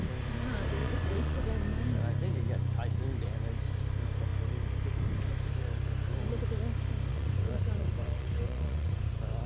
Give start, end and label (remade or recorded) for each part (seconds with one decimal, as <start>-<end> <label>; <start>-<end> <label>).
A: 0.0-0.8 recorded; 0.8-1.4 remade; 1.4-7.1 recorded; 7.1-9.1 remade; 9.1-9.5 recorded